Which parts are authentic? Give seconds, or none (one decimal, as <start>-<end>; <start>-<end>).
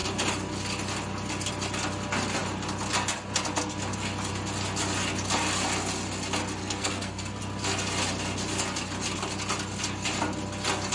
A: 0.0-6.6; 7.4-10.9